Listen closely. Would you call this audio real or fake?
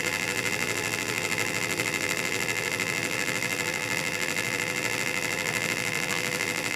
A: fake